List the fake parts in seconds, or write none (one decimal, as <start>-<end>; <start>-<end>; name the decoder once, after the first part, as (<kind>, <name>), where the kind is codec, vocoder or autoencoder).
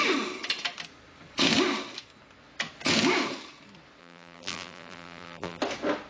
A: 4.0-5.6 (vocoder, BigVGAN v2)